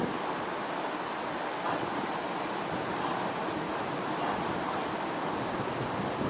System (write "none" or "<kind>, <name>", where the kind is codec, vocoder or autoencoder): none